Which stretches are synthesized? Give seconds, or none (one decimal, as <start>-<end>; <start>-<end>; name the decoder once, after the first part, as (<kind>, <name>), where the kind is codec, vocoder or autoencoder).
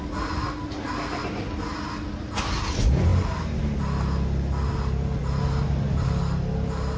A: none